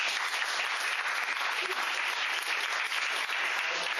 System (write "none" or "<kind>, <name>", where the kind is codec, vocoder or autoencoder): none